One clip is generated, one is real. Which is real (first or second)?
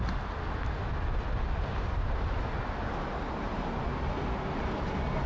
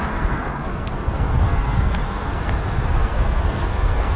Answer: first